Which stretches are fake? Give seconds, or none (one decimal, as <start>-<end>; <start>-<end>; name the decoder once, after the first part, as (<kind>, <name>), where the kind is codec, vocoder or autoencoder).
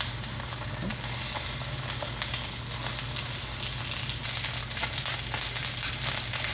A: none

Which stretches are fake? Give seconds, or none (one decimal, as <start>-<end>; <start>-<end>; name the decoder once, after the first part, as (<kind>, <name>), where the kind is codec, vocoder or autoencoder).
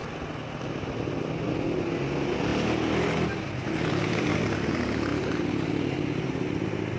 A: 2.5-4.0 (vocoder, BigVGAN v2); 5.1-5.8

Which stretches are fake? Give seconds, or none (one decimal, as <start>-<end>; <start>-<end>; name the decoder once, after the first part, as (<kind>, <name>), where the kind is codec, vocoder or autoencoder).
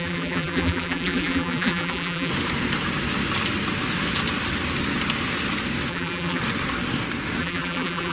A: 0.0-2.3 (vocoder, BigVGAN v2); 5.9-6.4; 7.4-8.1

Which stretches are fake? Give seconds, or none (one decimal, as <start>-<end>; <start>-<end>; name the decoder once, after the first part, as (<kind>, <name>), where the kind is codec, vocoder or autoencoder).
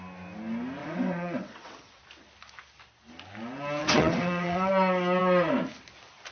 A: 0.8-2.0 (vocoder, WaveNeXt); 3.8-4.7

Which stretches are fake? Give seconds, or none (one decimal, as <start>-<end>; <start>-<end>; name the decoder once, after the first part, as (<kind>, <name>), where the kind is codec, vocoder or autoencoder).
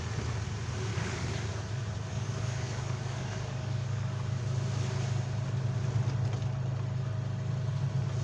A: 0.9-1.5 (codec, DAC); 2.1-4.4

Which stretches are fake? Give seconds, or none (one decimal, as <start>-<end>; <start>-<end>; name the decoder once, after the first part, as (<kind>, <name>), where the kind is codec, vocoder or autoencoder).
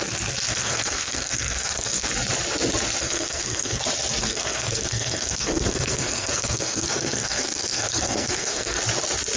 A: 0.5-2.1 (codec, SNAC); 3.0-3.8; 4.2-8.8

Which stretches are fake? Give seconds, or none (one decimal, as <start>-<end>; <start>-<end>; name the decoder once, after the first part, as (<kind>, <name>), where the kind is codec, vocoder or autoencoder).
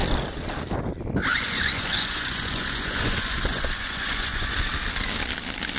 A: 1.3-4.7 (vocoder, Vocos)